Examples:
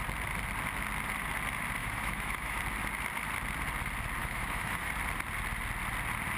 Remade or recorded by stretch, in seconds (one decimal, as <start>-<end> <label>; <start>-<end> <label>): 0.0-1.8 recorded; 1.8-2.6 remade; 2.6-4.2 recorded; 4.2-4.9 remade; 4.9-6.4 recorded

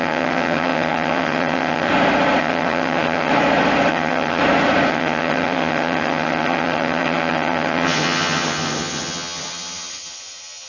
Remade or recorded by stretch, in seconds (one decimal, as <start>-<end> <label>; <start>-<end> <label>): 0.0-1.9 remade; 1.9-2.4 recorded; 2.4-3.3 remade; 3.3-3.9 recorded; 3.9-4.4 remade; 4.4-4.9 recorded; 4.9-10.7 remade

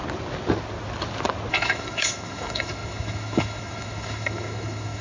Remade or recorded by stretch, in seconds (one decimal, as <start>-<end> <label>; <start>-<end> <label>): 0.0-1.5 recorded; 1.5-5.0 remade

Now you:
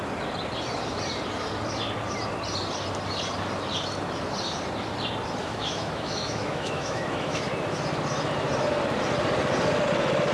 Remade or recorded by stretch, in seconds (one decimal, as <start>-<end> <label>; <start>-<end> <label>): 0.0-5.4 recorded; 5.4-7.4 remade; 7.4-10.3 recorded

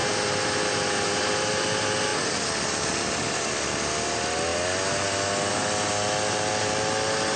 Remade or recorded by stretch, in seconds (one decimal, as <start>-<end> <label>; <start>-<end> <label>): 0.0-7.4 recorded